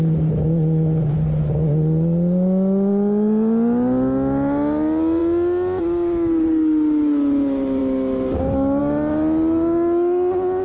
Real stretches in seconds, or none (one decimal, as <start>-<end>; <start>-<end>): 0.0-10.6